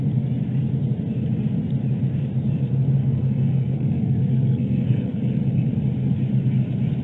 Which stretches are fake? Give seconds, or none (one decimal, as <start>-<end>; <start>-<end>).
3.0-5.7